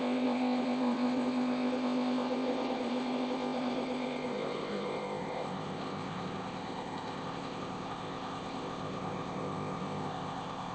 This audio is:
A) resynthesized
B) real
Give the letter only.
A